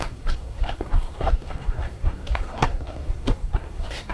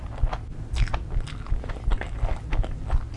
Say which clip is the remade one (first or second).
first